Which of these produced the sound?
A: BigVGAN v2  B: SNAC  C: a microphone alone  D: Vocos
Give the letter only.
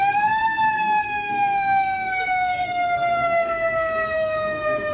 B